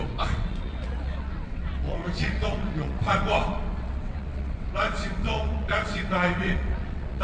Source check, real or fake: fake